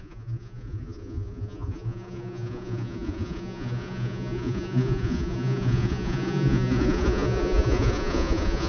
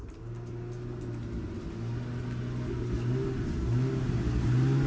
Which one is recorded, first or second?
second